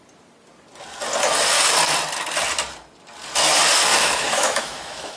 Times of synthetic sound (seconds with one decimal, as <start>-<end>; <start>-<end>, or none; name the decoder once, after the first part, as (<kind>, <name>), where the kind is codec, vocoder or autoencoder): 3.9-5.2 (autoencoder, DAC-VAE)